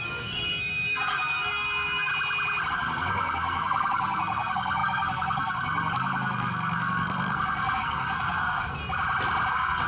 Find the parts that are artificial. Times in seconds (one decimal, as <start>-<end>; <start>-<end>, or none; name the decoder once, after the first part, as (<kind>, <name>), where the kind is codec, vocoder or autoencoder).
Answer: 0.0-2.1 (codec, SNAC); 2.7-8.8; 9.5-9.9